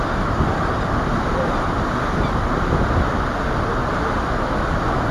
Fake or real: real